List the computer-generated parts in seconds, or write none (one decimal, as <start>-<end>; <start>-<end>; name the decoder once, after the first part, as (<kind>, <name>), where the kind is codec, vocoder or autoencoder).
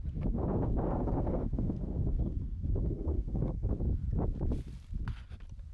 0.4-3.7 (codec, SNAC)